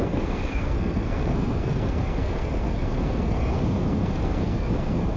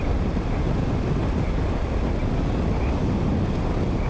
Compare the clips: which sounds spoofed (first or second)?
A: first